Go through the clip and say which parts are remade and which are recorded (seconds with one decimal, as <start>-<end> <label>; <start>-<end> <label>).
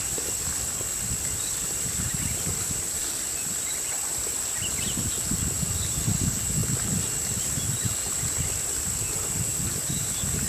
0.0-3.0 recorded; 3.0-4.4 remade; 4.4-6.6 recorded; 6.6-7.4 remade; 7.4-10.5 recorded